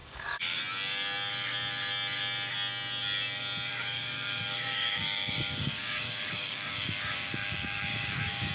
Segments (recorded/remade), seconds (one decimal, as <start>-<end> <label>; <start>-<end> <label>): 0.0-0.6 remade; 0.6-3.7 recorded; 3.7-8.5 remade